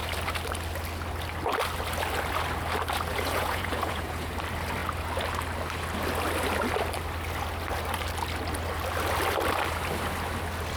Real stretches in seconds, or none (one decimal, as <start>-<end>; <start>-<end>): 0.0-3.1; 4.3-10.8